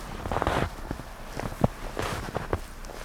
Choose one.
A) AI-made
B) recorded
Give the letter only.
B